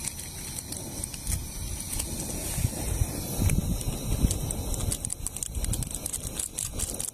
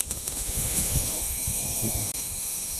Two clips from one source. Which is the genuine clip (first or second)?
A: first